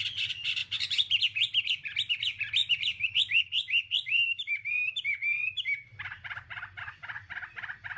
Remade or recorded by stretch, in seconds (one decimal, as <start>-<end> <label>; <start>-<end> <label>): 0.0-0.6 recorded; 0.6-1.2 remade; 1.2-2.6 recorded; 2.6-6.8 remade; 6.8-8.0 recorded